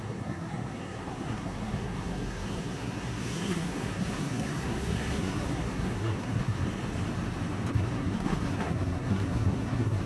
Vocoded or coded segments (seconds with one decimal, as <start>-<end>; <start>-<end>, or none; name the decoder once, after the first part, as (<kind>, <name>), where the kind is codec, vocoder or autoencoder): 0.0-6.7 (codec, SNAC); 7.7-10.1